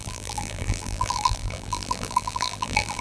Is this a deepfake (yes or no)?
yes